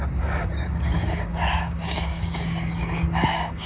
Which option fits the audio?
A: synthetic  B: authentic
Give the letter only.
A